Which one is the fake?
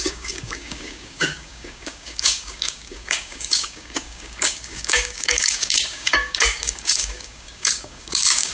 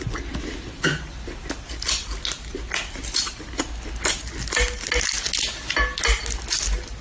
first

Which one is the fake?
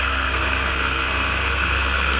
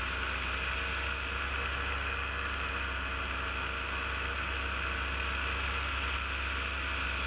first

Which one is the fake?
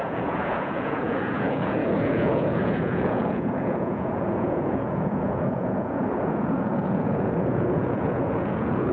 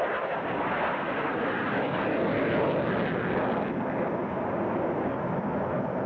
first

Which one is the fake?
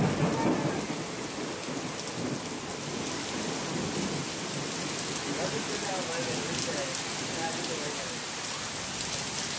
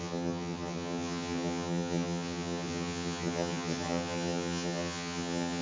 second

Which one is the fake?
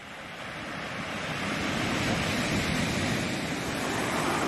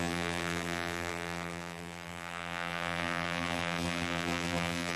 second